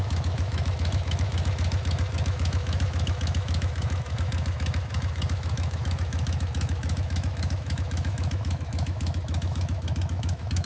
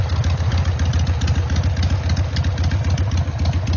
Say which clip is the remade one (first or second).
first